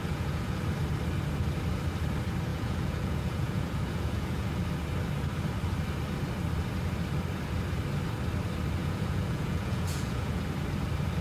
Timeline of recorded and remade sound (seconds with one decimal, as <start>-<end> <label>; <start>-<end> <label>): 0.0-0.6 remade; 0.6-2.5 recorded; 2.5-4.5 remade; 4.5-8.8 recorded; 8.8-10.4 remade; 10.4-11.2 recorded